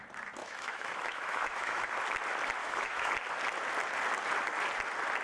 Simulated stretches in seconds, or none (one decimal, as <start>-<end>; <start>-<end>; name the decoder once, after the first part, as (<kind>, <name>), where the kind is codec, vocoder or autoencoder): 0.4-1.9 (autoencoder, DAC-VAE); 2.6-3.1

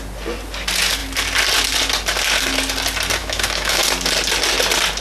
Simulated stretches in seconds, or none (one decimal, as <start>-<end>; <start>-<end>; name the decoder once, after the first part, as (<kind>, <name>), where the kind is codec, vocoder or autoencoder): 3.2-3.8 (autoencoder, DAC-VAE)

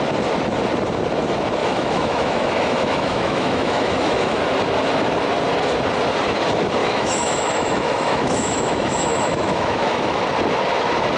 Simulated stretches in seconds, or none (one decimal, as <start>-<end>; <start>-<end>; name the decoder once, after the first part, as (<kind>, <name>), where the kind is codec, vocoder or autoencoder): 1.6-4.4 (autoencoder, DAC-VAE); 6.8-10.2

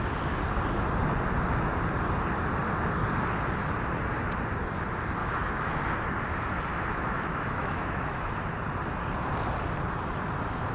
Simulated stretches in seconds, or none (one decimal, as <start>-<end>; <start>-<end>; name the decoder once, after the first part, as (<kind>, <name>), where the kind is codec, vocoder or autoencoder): 5.2-5.8 (autoencoder, DAC-VAE); 6.7-8.3

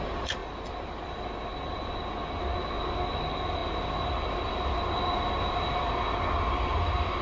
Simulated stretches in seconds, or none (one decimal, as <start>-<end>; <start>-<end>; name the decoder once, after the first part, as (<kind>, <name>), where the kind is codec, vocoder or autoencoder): none